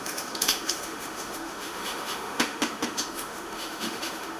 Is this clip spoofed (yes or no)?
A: yes